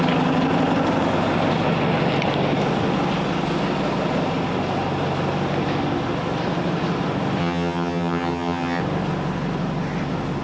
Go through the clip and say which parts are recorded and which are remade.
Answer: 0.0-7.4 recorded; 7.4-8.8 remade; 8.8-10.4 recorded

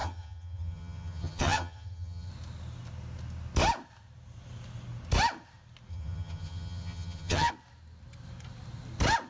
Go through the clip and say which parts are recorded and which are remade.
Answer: 0.0-2.3 remade; 2.3-5.9 recorded; 5.9-7.5 remade; 7.5-9.3 recorded

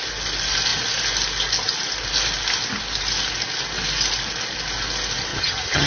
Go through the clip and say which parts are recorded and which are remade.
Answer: 0.0-5.3 recorded; 5.3-5.9 remade